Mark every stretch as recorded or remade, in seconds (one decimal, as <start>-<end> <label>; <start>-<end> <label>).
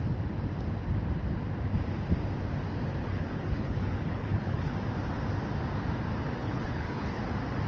0.0-3.0 recorded; 3.0-4.7 remade; 4.7-6.4 recorded; 6.4-7.2 remade; 7.2-7.7 recorded